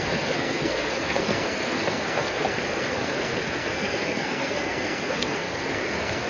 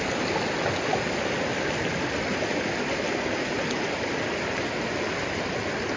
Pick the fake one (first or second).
first